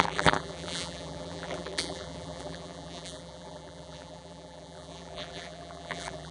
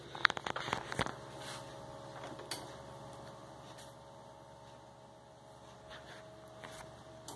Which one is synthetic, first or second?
first